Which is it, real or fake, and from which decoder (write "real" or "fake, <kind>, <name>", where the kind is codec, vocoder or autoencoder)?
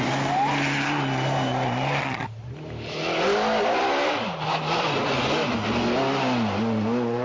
real